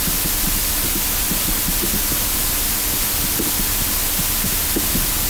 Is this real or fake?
real